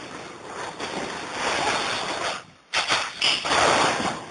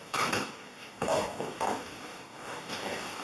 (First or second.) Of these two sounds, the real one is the first